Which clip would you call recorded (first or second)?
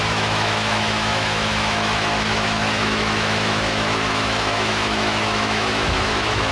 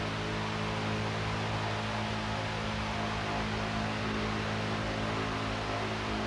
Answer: second